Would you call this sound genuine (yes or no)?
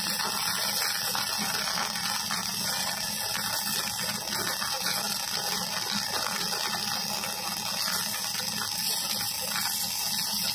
yes